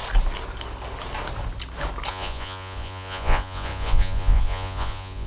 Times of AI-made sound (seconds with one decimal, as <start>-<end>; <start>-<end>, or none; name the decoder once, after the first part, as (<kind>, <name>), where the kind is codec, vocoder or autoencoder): 2.1-5.3 (vocoder, Vocos)